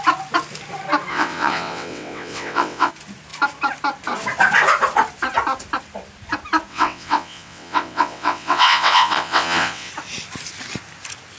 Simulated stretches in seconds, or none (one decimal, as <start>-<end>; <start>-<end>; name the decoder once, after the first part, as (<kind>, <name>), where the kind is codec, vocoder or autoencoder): 1.1-2.9 (vocoder, WaveNeXt); 6.7-9.9